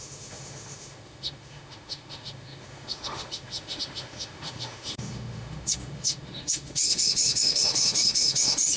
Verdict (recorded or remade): remade